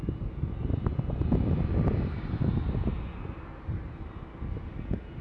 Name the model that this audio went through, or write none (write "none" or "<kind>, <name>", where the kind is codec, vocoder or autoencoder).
none